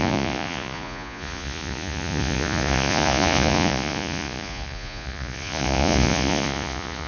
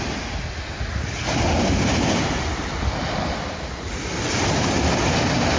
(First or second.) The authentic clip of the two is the second